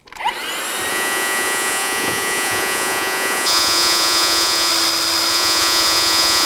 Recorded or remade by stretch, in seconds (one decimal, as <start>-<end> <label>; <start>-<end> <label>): 0.0-0.9 recorded; 0.9-4.7 remade; 4.7-5.3 recorded; 5.3-6.5 remade